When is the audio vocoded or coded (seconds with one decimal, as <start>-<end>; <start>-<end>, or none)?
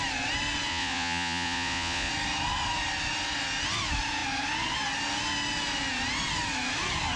0.7-2.1